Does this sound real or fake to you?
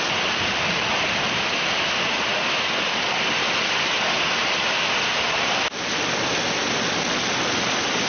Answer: real